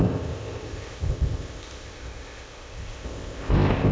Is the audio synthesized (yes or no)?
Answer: yes